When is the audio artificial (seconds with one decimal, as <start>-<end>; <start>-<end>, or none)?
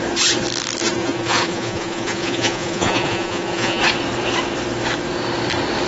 1.0-3.8